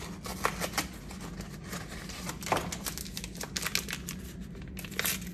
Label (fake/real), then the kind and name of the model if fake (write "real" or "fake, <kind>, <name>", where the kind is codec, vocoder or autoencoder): real